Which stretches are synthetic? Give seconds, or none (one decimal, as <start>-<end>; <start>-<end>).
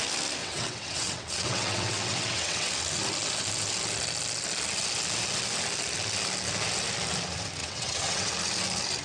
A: 0.4-2.7; 7.6-8.3